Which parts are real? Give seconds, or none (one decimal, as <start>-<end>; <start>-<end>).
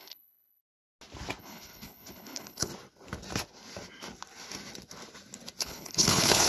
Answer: 0.6-1.4; 2.7-5.6